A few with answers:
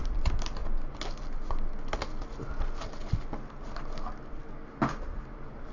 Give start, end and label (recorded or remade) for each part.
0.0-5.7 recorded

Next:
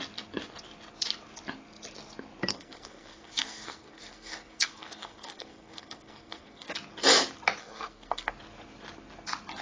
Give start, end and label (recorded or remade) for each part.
0.0-2.5 recorded; 2.5-6.7 remade; 6.7-7.6 recorded; 7.6-8.3 remade; 8.3-9.6 recorded